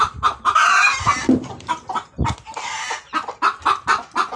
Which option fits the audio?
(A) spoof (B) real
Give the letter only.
B